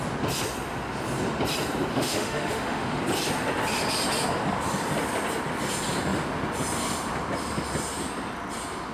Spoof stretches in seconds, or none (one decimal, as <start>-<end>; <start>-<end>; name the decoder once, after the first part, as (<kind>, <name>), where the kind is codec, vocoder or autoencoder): 1.9-3.0 (autoencoder, DAC-VAE)